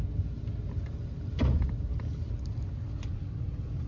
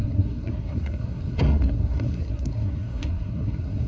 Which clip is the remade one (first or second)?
second